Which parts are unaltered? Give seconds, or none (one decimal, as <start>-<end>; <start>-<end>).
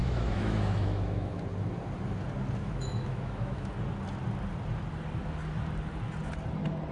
1.4-2.6; 3.7-6.9